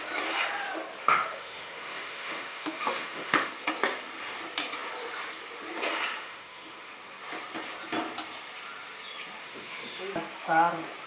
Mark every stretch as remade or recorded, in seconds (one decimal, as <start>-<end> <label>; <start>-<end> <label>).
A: 0.0-1.0 recorded; 1.0-3.5 remade; 3.5-6.2 recorded; 6.2-6.9 remade; 6.9-9.4 recorded; 9.4-10.0 remade; 10.0-11.1 recorded